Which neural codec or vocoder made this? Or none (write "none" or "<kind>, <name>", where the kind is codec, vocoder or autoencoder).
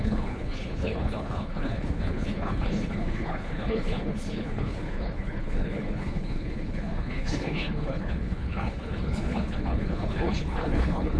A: codec, HILCodec